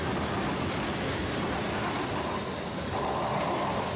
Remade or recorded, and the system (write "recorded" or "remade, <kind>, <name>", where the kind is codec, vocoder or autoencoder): recorded